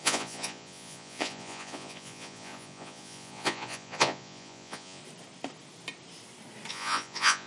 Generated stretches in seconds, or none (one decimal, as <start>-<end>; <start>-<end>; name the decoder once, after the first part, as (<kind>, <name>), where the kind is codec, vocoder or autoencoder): 0.0-5.0 (vocoder, Vocos); 6.7-7.5